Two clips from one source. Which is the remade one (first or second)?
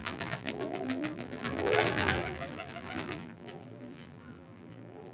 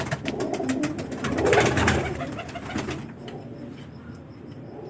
first